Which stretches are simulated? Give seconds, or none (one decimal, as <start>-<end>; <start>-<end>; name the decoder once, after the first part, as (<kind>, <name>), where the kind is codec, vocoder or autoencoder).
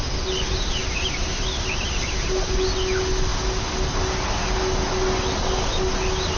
none